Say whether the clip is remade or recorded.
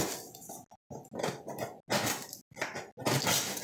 recorded